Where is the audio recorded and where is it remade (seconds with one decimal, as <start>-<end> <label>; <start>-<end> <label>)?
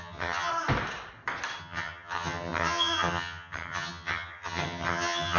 0.0-0.5 remade; 0.5-1.6 recorded; 1.6-5.4 remade